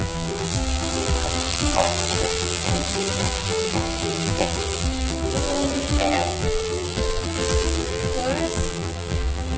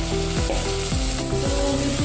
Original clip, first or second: second